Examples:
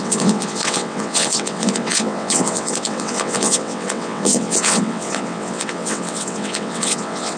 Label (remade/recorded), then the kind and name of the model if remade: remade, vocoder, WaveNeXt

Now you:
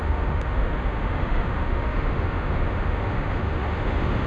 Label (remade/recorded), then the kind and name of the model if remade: remade, autoencoder, DAC-VAE